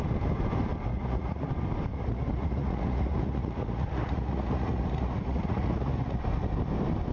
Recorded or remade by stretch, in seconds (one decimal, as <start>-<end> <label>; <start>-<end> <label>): 0.0-0.9 recorded; 0.9-1.5 remade; 1.5-1.9 recorded; 1.9-6.2 remade; 6.2-7.1 recorded